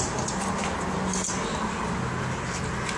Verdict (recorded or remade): recorded